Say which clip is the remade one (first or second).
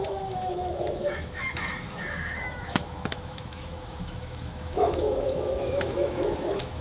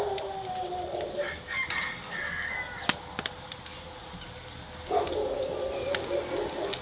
first